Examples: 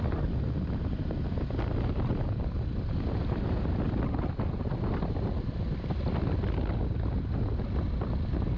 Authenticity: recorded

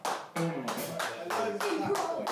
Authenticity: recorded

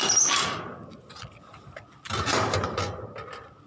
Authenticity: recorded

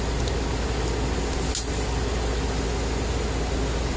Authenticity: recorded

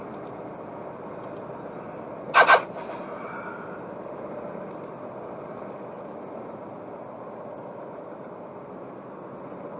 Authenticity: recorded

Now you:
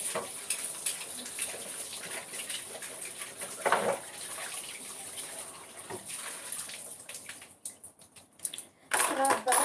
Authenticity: recorded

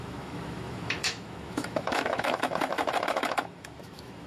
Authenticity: remade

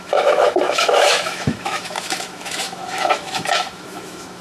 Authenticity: remade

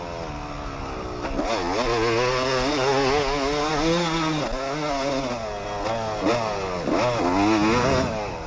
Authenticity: recorded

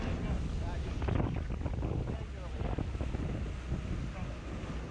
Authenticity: recorded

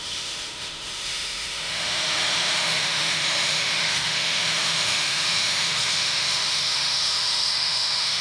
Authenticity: remade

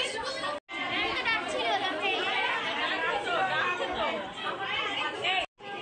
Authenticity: recorded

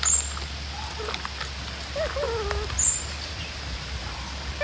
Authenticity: recorded